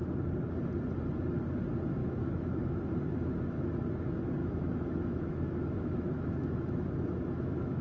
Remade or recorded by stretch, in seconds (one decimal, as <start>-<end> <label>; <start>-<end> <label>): 0.0-2.0 recorded; 2.0-2.8 remade; 2.8-4.4 recorded; 4.4-7.8 remade